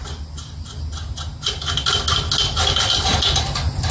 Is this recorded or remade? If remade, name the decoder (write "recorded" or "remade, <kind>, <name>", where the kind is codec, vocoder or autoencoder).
recorded